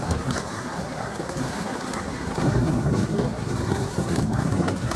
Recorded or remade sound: remade